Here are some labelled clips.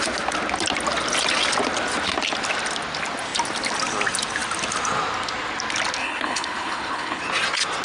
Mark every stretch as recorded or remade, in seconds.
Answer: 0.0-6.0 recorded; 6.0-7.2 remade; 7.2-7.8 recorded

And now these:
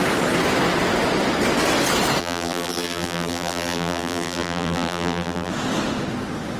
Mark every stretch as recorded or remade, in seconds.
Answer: 0.0-2.2 recorded; 2.2-5.5 remade; 5.5-6.6 recorded

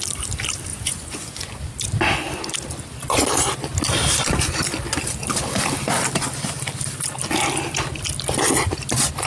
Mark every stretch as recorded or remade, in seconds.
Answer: 0.0-0.7 recorded; 0.7-1.7 remade; 1.7-9.3 recorded

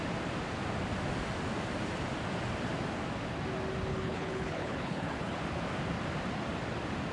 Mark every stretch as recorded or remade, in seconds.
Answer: 0.0-3.9 recorded; 3.9-5.4 remade; 5.4-7.1 recorded

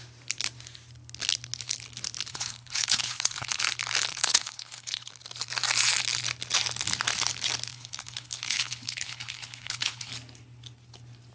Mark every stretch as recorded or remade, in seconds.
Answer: 0.0-2.3 recorded; 2.3-3.6 remade; 3.6-4.1 recorded; 4.1-5.1 remade; 5.1-7.7 recorded; 7.7-10.1 remade; 10.1-11.3 recorded

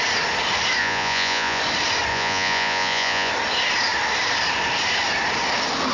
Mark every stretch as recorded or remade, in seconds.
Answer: 0.0-0.8 recorded; 0.8-1.6 remade; 1.6-2.1 recorded; 2.1-3.3 remade; 3.3-5.9 recorded